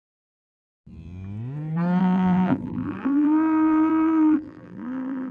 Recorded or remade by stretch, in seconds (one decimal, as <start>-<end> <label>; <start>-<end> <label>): 0.0-2.0 recorded; 2.0-5.3 remade